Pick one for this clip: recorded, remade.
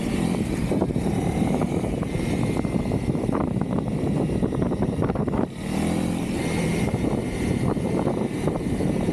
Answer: remade